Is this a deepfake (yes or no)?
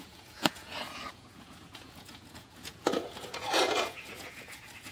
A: yes